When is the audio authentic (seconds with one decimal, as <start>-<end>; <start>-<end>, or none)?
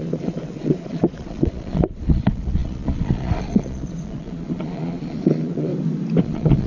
5.7-6.2